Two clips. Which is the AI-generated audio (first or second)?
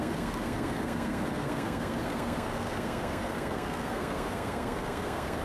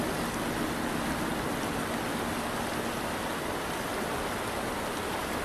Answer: first